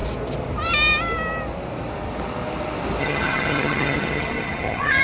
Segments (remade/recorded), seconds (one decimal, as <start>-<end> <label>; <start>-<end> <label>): 0.0-3.0 recorded; 3.0-5.0 remade